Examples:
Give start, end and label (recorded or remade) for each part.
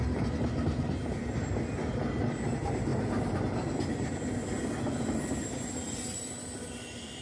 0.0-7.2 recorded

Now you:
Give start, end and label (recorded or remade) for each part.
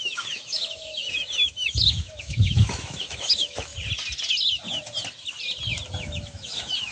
0.0-3.7 remade; 3.7-6.0 recorded; 6.0-6.9 remade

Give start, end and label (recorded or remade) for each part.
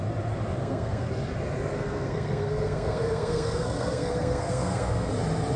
0.0-0.6 recorded; 0.6-1.1 remade; 1.1-1.7 recorded; 1.7-5.1 remade; 5.1-5.6 recorded